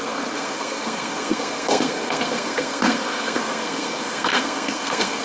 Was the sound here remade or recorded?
remade